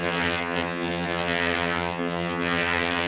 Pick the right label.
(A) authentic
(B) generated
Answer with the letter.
B